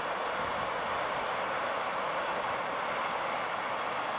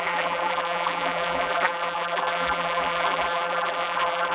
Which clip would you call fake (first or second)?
second